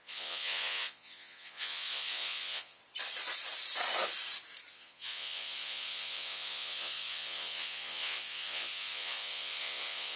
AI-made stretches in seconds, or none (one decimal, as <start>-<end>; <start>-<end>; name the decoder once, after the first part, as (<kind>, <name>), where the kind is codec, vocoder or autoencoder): 0.0-2.8 (vocoder, Vocos); 4.7-10.2